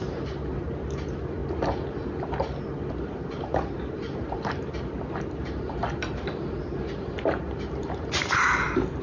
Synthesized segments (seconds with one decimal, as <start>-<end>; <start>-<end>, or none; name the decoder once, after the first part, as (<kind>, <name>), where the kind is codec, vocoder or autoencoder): 0.0-1.4 (vocoder, BigVGAN v2); 3.0-9.0